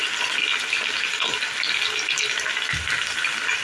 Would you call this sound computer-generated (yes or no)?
no